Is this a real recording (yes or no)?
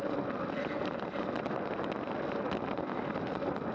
yes